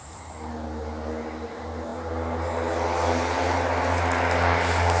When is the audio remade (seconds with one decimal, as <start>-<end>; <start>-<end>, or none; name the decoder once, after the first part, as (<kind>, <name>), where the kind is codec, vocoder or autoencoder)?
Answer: none